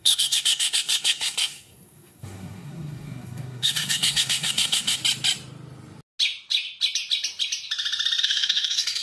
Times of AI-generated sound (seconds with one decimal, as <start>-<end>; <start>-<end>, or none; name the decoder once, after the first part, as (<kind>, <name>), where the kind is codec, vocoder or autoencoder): 0.0-5.0 (codec, SNAC); 8.2-9.0